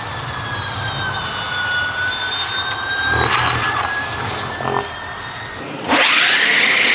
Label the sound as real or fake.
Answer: real